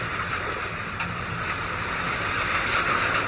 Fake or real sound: real